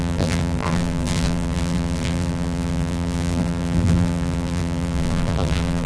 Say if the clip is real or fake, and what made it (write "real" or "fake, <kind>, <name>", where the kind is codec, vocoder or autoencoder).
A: fake, vocoder, BigVGAN v2